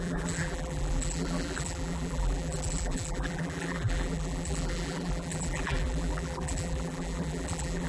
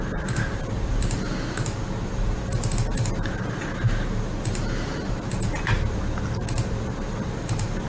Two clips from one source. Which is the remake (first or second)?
first